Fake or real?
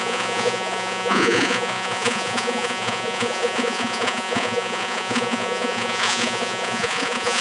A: fake